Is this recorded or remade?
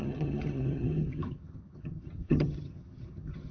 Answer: remade